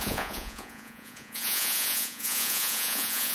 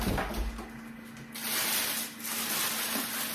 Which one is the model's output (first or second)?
first